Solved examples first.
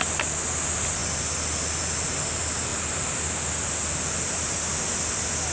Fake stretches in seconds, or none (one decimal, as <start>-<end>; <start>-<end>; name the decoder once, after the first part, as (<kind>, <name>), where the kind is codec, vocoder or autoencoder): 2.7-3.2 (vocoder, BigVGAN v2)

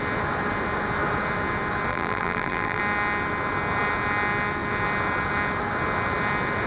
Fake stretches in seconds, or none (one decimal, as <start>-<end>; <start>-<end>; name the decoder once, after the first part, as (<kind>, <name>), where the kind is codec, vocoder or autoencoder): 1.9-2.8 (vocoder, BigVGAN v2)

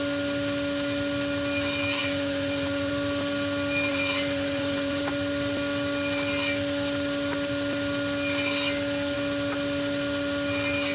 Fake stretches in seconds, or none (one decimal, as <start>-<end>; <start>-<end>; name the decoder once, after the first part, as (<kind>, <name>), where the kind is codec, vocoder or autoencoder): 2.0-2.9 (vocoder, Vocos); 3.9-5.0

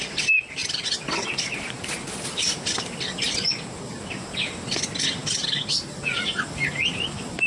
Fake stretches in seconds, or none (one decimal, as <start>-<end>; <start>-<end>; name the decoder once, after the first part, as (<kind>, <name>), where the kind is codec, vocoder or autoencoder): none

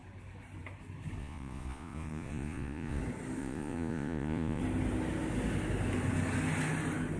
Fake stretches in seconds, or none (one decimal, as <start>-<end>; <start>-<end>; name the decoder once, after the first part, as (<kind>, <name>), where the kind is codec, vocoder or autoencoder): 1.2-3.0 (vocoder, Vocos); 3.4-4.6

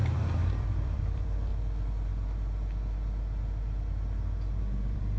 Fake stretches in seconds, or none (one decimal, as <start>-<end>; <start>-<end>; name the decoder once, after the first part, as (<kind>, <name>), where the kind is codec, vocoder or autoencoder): 0.5-1.5 (vocoder, BigVGAN v2); 4.6-5.2

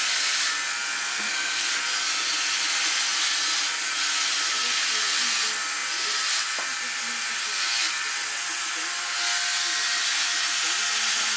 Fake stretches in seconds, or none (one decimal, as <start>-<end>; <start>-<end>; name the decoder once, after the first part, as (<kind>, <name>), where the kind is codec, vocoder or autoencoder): 1.1-1.7 (codec, SNAC)

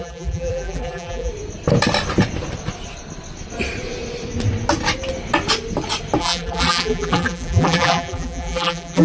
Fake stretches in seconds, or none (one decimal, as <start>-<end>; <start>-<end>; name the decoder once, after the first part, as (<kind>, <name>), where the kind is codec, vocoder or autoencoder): 0.0-1.3 (vocoder, BigVGAN v2); 6.2-9.0